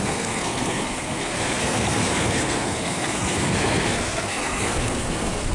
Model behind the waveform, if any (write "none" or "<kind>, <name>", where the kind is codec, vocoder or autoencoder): codec, SNAC